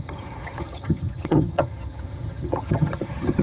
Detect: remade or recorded remade